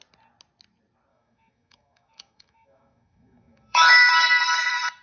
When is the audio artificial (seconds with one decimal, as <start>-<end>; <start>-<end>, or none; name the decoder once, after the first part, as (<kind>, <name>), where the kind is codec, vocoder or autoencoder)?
1.1-4.1 (autoencoder, DAC-VAE)